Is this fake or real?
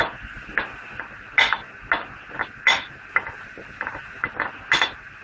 real